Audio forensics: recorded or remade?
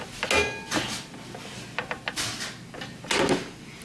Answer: recorded